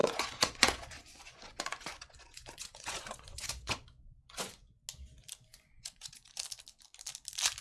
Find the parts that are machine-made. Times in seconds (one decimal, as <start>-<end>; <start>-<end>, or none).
0.0-4.6; 5.5-6.3